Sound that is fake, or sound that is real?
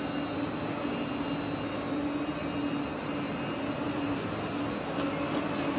real